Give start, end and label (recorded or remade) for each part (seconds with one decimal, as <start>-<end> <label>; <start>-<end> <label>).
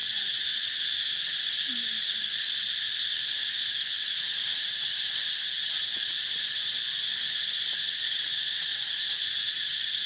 0.0-0.9 remade; 0.9-10.1 recorded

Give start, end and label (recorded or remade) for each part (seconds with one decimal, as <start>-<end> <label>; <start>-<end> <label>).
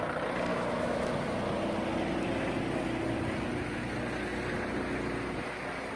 0.0-0.5 recorded; 0.5-1.1 remade; 1.1-6.0 recorded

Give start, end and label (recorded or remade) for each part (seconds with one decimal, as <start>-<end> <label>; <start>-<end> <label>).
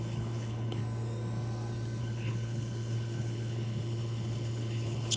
0.0-0.8 remade; 0.8-2.0 recorded; 2.0-5.2 remade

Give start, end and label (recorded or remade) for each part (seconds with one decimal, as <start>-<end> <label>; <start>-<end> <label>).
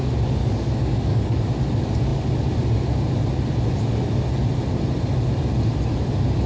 0.0-0.4 recorded; 0.4-1.4 remade; 1.4-6.5 recorded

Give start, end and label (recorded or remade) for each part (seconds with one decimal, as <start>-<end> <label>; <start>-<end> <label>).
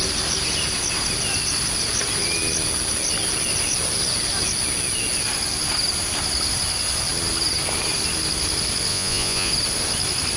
0.0-8.9 recorded; 8.9-9.5 remade; 9.5-10.4 recorded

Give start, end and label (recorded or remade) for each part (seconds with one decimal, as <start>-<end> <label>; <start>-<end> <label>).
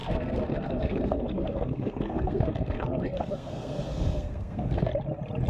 0.0-4.9 remade; 4.9-5.5 recorded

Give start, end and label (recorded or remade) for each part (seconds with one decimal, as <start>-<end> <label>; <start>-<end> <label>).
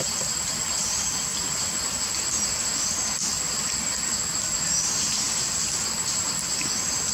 0.0-7.1 recorded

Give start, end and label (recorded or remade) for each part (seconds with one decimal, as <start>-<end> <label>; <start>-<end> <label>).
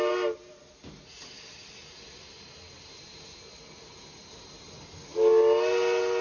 0.0-6.2 recorded